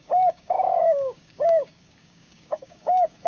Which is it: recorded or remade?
remade